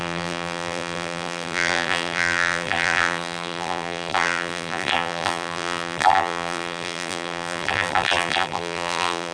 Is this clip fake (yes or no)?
yes